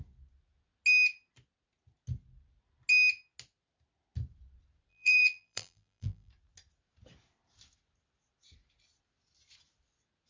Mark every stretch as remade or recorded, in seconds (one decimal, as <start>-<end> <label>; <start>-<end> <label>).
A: 0.0-4.9 recorded; 4.9-6.3 remade; 6.3-10.3 recorded